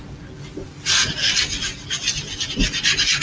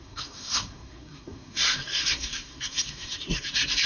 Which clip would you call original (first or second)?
first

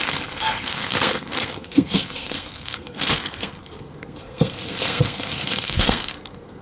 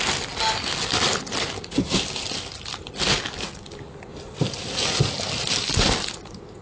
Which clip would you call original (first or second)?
second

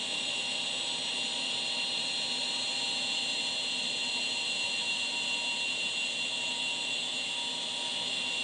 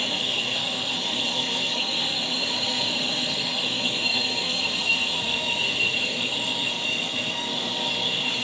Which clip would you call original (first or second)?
first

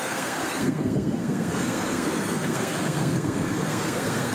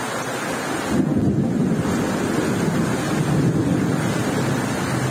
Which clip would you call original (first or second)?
second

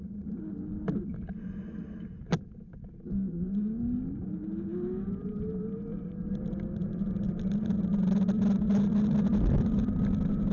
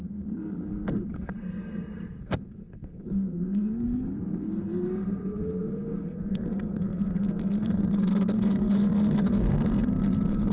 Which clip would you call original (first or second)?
first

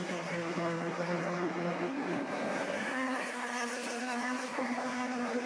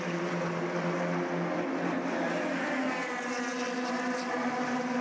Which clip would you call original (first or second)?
second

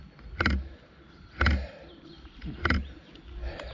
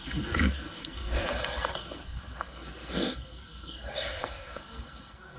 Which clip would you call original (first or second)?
first